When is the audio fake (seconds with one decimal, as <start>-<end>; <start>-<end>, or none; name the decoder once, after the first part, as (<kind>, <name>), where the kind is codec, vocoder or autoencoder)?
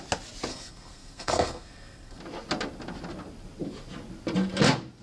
0.5-2.2 (codec, SNAC)